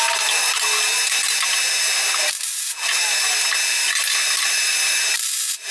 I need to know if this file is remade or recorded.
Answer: recorded